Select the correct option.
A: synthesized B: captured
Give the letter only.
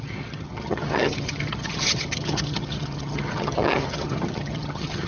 A